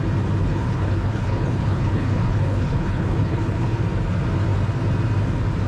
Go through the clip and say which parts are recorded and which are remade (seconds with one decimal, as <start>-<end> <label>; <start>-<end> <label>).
0.0-0.4 recorded; 0.4-3.8 remade; 3.8-5.7 recorded